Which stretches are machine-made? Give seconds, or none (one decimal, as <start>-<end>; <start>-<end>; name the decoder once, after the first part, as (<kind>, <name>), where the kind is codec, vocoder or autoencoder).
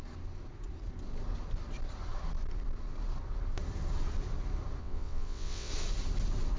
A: 4.8-5.7 (vocoder, WaveNeXt)